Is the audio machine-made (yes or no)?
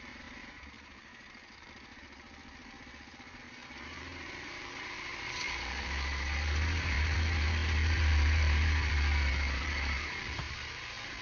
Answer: yes